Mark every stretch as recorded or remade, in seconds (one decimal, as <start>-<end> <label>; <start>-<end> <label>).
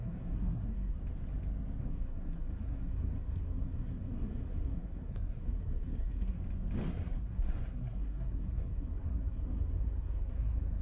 0.0-1.0 remade; 1.0-1.8 recorded; 1.8-6.4 remade; 6.4-6.9 recorded; 6.9-10.8 remade